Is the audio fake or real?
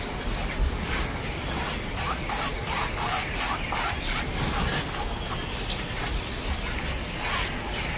real